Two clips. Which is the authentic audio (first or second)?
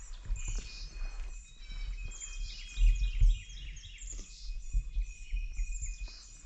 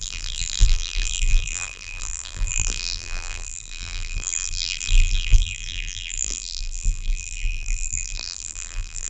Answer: first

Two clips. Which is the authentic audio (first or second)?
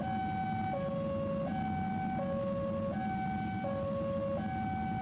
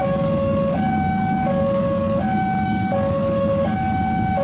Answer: first